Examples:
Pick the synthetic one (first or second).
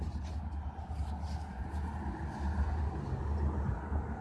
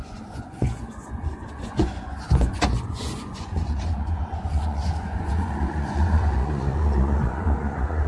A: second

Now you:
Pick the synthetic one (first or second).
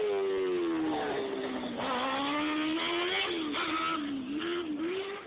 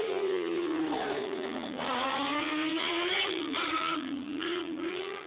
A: second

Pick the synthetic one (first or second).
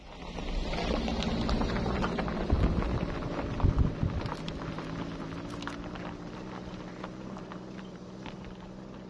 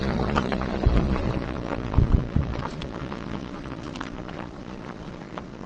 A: second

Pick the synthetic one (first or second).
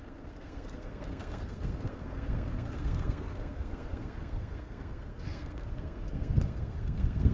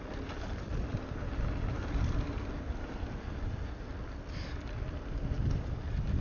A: first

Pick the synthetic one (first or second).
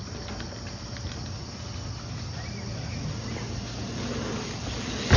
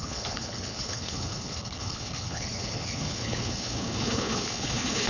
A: second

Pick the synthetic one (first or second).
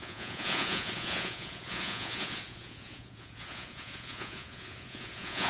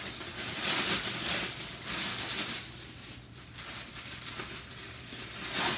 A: first